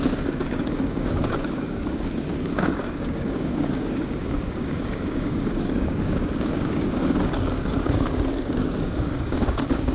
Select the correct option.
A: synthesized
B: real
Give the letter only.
A